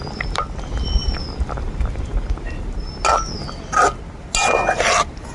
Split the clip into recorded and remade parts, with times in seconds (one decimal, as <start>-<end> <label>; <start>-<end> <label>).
0.0-5.3 recorded